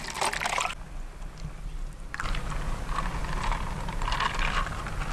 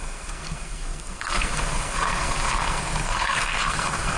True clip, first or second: first